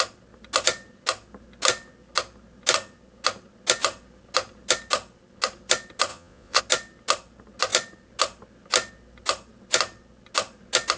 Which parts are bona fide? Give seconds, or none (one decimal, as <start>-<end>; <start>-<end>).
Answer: 0.0-6.1; 6.6-11.0